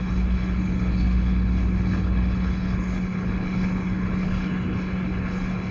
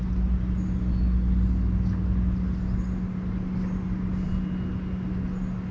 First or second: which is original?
second